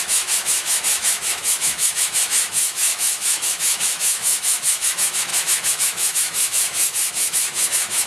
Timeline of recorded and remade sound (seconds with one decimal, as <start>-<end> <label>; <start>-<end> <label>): 0.0-8.1 remade